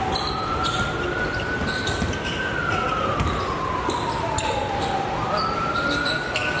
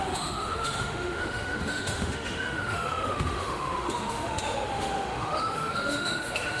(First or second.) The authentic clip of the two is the first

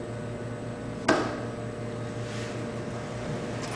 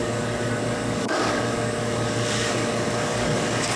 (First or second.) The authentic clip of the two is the first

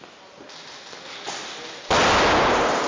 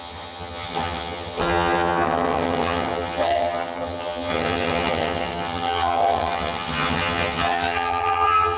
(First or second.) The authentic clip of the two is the first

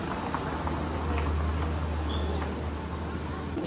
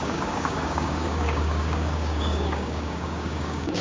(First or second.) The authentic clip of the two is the first